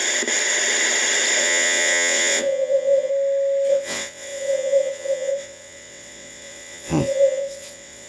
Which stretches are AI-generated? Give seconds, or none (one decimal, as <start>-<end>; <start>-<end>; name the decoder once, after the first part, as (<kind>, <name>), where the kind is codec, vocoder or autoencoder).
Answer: 1.4-3.1 (vocoder, WaveNeXt); 3.7-8.1